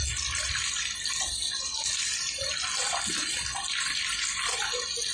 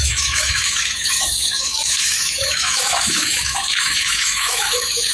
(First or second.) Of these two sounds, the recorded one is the first